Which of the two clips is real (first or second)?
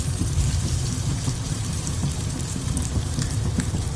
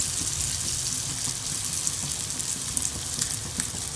second